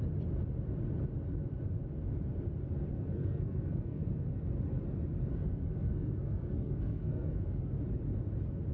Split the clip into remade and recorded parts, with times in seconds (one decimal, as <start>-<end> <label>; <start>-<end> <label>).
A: 0.0-2.9 recorded; 2.9-4.3 remade; 4.3-5.3 recorded; 5.3-7.7 remade; 7.7-8.7 recorded